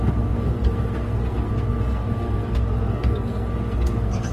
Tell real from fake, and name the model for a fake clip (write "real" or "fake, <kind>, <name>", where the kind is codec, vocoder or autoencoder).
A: fake, codec, SNAC